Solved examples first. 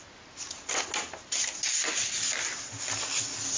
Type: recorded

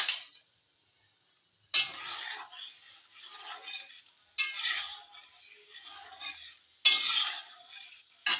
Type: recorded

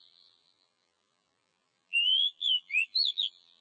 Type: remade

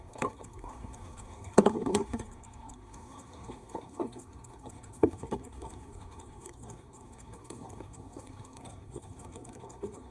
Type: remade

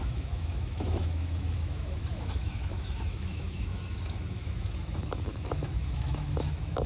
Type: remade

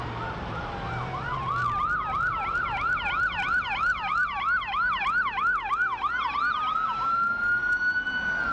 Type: recorded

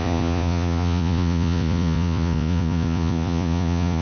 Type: remade